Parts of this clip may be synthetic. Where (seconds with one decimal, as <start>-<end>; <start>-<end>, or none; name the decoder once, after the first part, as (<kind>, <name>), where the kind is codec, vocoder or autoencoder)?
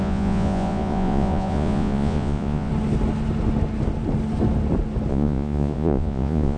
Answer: 0.0-2.7 (vocoder, Vocos); 5.1-6.6